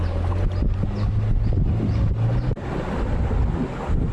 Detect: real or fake real